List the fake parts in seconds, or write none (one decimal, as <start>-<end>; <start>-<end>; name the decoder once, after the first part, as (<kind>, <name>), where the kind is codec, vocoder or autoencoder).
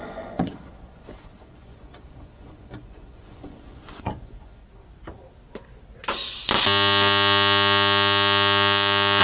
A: 0.0-4.6 (vocoder, Vocos)